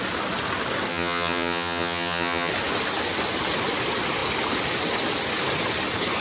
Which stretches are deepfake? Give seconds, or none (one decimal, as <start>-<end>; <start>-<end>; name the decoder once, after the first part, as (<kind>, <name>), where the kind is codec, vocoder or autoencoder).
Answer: 0.9-2.5 (vocoder, HiFi-GAN)